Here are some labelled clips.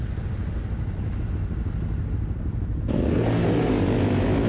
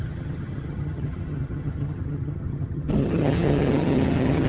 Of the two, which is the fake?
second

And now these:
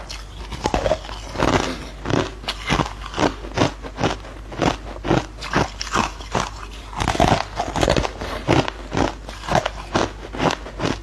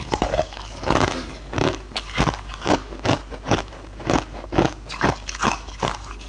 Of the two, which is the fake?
second